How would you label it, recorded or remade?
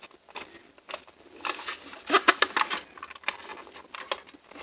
recorded